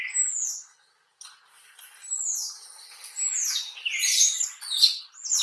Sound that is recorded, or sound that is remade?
recorded